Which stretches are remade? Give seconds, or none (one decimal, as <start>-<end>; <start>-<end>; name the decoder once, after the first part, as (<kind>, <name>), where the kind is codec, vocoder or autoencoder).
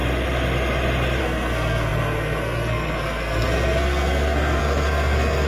1.2-5.5 (codec, SNAC)